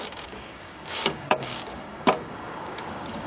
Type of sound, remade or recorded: remade